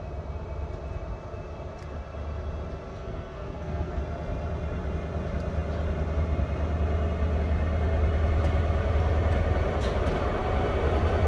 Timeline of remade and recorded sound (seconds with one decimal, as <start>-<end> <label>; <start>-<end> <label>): 0.0-2.9 recorded; 2.9-4.0 remade; 4.0-11.3 recorded